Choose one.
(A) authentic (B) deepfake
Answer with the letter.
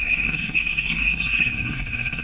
B